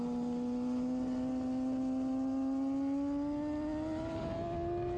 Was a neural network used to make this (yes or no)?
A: no